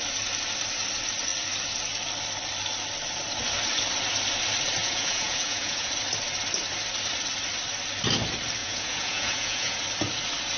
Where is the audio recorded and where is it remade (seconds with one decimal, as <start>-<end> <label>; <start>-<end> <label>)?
0.0-4.8 recorded; 4.8-5.9 remade; 5.9-8.6 recorded; 8.6-9.8 remade; 9.8-10.6 recorded

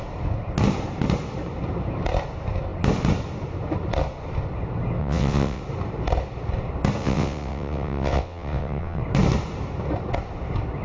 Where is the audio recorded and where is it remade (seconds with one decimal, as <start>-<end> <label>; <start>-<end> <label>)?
0.0-5.0 recorded; 5.0-5.6 remade; 5.6-7.0 recorded; 7.0-9.0 remade; 9.0-10.8 recorded

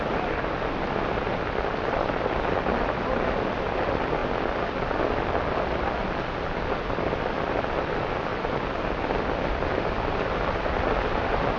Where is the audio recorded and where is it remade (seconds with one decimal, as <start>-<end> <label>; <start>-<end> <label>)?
0.0-11.6 recorded

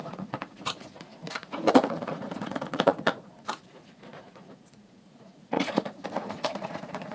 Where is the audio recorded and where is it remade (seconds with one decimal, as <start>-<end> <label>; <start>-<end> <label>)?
0.0-7.1 remade

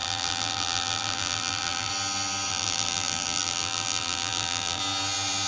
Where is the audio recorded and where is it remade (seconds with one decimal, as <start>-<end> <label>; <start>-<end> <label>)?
0.0-1.9 remade; 1.9-2.5 recorded; 2.5-4.8 remade; 4.8-5.5 recorded

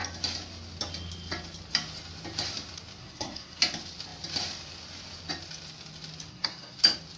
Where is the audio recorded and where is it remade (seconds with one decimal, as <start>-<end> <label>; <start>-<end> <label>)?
0.0-3.0 recorded; 3.0-3.6 remade; 3.6-6.3 recorded; 6.3-6.8 remade; 6.8-7.2 recorded

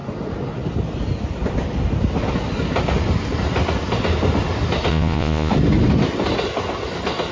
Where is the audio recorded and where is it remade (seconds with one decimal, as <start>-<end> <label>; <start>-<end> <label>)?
0.0-4.9 recorded; 4.9-5.5 remade; 5.5-7.3 recorded